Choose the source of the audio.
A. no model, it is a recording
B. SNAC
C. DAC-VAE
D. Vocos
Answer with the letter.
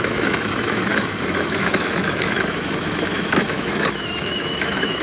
C